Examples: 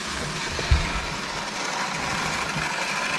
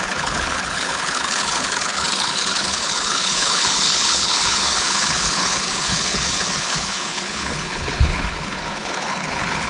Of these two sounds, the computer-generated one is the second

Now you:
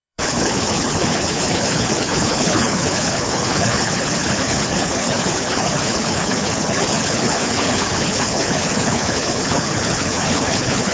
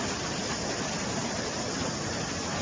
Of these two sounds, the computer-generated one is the first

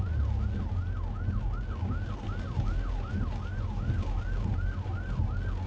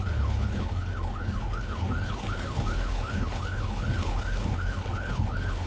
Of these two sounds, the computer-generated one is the second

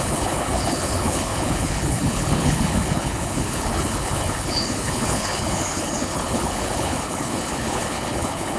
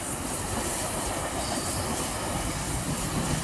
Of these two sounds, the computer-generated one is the first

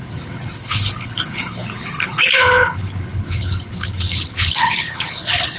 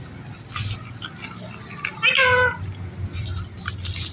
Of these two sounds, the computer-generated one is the first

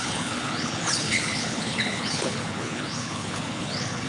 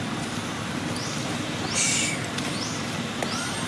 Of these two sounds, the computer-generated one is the first